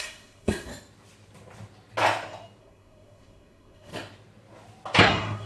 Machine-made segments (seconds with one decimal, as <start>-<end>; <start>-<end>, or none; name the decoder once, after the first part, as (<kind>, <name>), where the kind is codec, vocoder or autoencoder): 0.0-0.7 (codec, SNAC); 2.6-3.9; 5.0-5.5